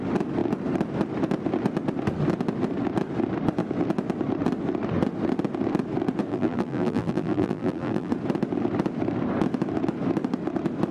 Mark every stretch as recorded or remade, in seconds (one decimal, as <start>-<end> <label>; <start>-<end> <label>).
0.0-6.3 recorded; 6.3-8.1 remade; 8.1-10.9 recorded